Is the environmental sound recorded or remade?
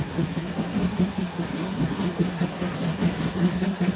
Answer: remade